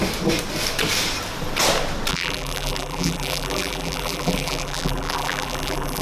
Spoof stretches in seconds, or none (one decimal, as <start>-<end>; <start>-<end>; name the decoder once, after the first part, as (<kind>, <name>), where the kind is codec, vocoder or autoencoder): 2.1-6.0 (vocoder, BigVGAN v2)